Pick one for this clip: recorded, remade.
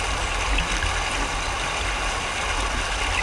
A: recorded